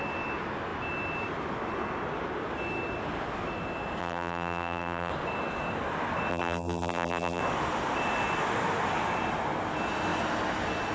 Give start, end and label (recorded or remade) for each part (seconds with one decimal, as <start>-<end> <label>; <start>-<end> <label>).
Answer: 0.0-4.0 recorded; 4.0-5.1 remade; 5.1-6.3 recorded; 6.3-7.4 remade; 7.4-10.9 recorded

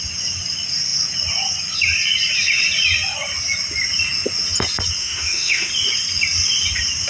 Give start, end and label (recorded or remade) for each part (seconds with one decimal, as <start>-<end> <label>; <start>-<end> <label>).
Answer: 0.0-5.0 recorded; 5.0-5.7 remade; 5.7-7.1 recorded

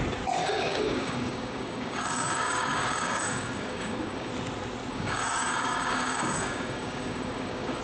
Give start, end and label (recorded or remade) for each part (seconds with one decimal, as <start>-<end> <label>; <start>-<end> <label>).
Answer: 0.0-0.4 recorded; 0.4-4.3 remade; 4.3-4.9 recorded; 4.9-7.8 remade

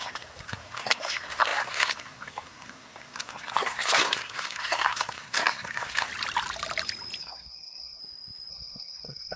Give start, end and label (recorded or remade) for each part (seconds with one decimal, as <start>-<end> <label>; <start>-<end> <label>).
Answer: 0.0-6.1 remade; 6.1-7.2 recorded; 7.2-8.0 remade; 8.0-8.5 recorded; 8.5-9.4 remade

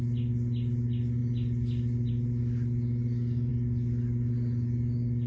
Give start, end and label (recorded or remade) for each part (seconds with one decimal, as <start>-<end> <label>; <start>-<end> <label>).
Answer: 0.0-5.3 recorded

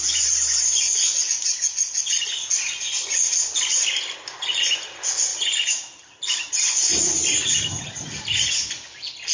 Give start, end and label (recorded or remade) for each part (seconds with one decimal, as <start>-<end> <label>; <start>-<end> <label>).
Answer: 0.0-5.3 recorded; 5.3-7.0 remade; 7.0-9.3 recorded